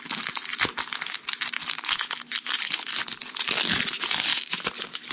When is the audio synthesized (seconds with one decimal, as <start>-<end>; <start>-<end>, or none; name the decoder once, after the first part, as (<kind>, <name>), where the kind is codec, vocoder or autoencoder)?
0.0-0.5 (vocoder, BigVGAN v2); 2.5-4.3